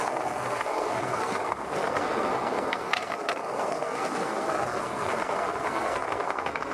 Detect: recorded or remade remade